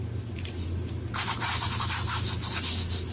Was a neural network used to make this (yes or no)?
no